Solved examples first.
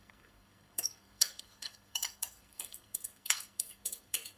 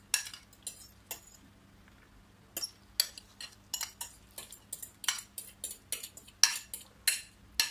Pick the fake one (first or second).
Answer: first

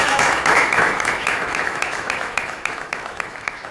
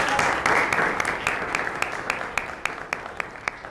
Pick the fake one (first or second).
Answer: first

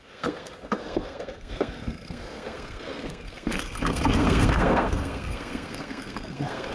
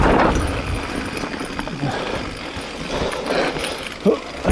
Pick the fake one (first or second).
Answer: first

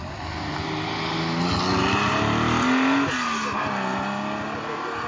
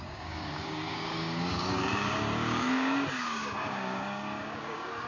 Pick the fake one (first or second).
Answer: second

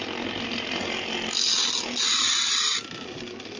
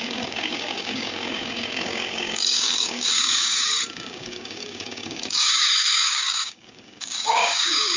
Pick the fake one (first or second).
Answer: second